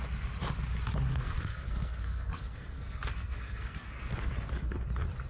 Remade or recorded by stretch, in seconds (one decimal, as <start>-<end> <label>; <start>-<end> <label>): 0.0-1.1 recorded; 1.1-4.3 remade; 4.3-5.3 recorded